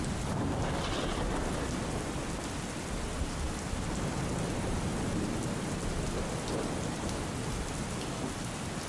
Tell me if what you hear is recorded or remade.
recorded